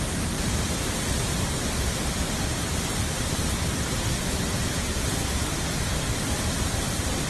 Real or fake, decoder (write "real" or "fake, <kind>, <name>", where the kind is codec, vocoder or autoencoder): real